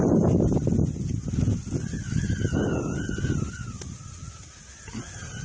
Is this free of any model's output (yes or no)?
yes